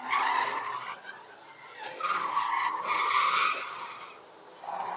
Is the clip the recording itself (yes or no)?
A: yes